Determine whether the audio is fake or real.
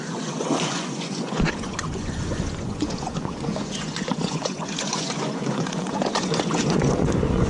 fake